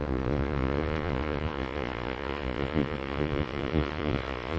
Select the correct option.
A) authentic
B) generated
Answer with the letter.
B